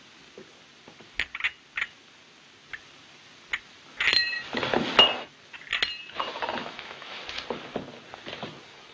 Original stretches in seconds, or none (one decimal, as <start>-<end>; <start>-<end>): 0.0-6.6; 7.2-8.9